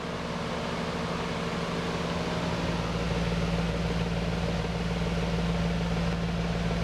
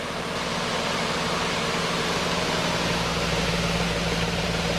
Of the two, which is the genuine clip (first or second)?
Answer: first